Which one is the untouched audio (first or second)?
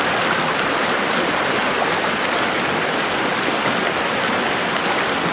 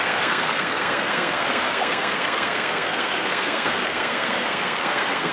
first